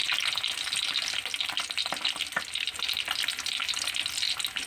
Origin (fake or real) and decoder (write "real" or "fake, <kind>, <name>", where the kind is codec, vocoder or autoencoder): real